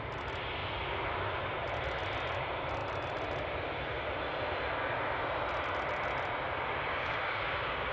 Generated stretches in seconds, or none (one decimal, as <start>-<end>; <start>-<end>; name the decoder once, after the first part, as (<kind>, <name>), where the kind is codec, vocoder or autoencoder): 6.9-7.9 (codec, DAC)